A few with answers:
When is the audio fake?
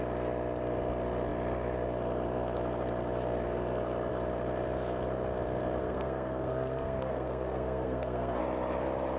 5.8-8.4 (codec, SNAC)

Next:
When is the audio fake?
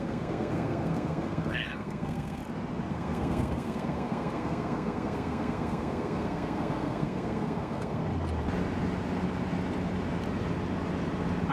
0.0-2.4 (codec, SNAC); 2.9-8.0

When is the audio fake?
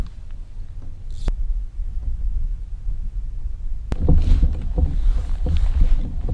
none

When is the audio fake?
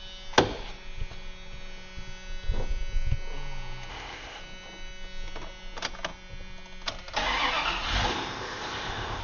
3.9-4.4 (codec, ZipCodec); 8.1-9.2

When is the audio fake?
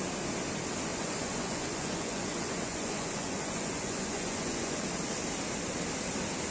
0.9-4.8 (vocoder, Vocos)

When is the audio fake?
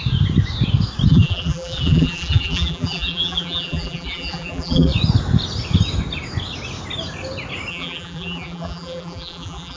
1.1-4.9 (vocoder, BigVGAN v2); 7.7-9.8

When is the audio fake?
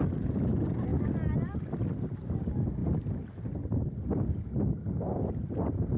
none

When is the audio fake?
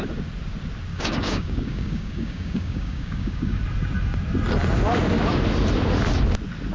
0.9-3.6 (codec, DAC)